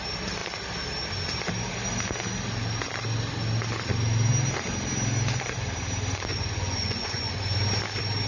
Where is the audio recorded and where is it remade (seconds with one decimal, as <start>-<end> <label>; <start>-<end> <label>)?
0.0-6.3 recorded; 6.3-7.4 remade; 7.4-8.3 recorded